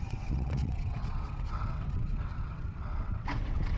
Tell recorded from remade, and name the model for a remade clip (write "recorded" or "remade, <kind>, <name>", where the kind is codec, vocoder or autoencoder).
remade, vocoder, WaveNeXt